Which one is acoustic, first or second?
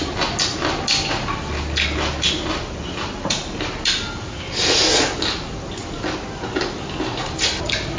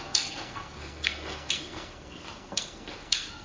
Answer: first